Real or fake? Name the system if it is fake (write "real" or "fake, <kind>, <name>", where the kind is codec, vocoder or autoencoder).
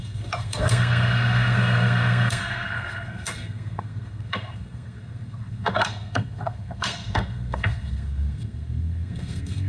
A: fake, codec, SNAC